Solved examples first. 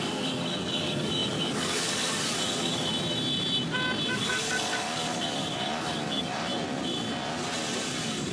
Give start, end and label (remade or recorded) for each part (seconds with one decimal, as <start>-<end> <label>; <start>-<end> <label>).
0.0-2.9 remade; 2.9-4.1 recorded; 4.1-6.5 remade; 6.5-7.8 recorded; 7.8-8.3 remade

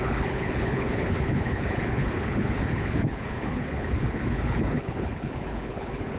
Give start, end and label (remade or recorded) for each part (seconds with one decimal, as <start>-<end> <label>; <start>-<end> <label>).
0.0-6.2 remade

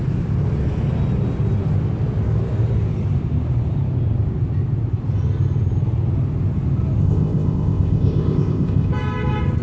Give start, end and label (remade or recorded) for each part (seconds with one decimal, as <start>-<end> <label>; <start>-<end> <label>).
0.0-7.0 recorded; 7.0-8.9 remade; 8.9-9.6 recorded

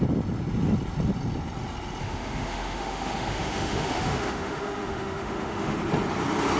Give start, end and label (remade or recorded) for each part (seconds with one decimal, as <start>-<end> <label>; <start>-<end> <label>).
0.0-2.0 recorded; 2.0-5.8 remade; 5.8-6.6 recorded